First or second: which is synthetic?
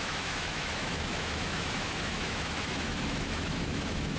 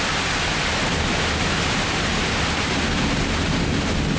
first